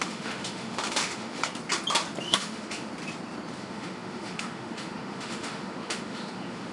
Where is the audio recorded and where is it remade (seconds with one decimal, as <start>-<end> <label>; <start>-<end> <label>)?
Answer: 0.0-1.4 remade; 1.4-2.2 recorded; 2.2-2.9 remade; 2.9-3.5 recorded; 3.5-6.7 remade